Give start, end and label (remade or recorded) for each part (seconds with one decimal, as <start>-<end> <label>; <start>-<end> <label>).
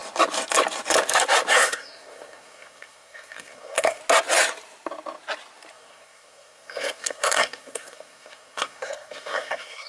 0.0-1.5 recorded; 1.5-4.0 remade; 4.0-5.7 recorded; 5.7-9.9 remade